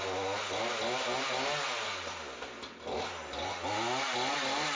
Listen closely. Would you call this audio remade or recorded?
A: recorded